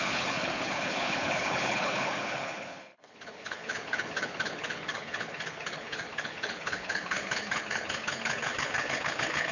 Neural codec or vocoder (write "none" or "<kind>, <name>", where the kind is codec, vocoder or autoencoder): codec, HILCodec